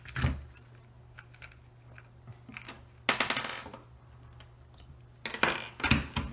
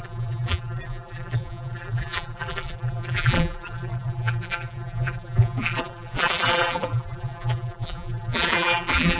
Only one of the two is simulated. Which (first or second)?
second